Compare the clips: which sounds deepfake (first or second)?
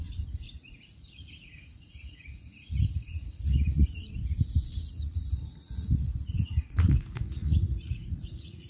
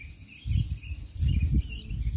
first